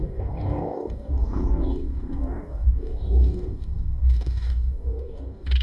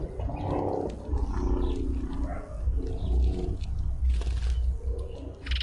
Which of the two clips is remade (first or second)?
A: first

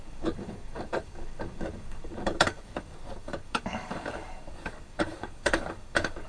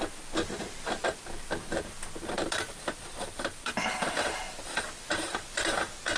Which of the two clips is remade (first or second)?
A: first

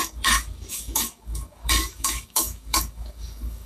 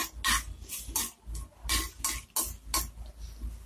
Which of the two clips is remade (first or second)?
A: first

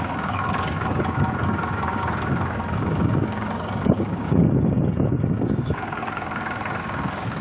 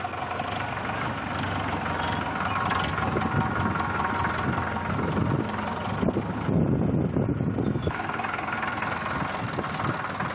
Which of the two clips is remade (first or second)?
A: first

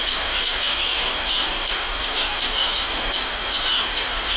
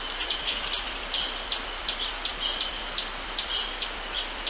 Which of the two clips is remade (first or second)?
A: first